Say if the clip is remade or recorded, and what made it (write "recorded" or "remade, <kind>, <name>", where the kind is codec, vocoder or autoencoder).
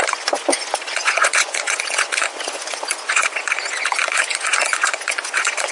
remade, vocoder, Vocos